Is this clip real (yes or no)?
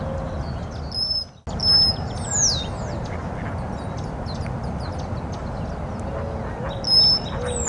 yes